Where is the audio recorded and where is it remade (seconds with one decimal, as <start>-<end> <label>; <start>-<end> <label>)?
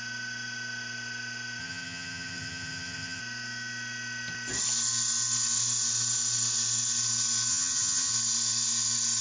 0.0-1.6 recorded; 1.6-3.2 remade; 3.2-7.5 recorded; 7.5-8.1 remade; 8.1-9.2 recorded